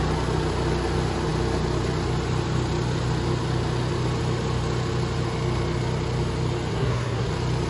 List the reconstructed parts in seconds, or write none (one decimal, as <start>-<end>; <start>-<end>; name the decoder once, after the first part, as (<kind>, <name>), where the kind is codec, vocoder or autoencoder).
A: 6.7-7.3 (codec, SNAC)